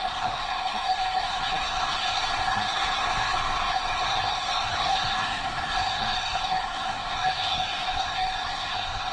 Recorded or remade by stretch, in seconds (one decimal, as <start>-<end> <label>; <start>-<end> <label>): 0.0-9.1 remade